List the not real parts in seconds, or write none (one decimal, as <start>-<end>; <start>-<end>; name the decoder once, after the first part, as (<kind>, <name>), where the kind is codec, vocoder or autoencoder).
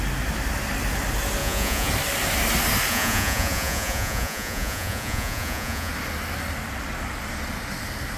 1.4-1.9 (vocoder, Vocos); 2.9-5.9